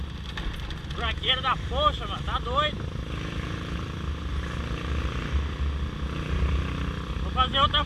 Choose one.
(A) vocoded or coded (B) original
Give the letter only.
B